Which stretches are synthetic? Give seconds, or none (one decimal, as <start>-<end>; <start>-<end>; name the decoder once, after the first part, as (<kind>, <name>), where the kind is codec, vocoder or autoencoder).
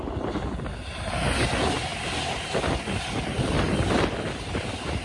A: none